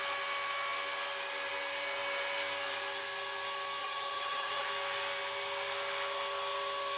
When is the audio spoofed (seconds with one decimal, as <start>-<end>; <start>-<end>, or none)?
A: 3.8-4.7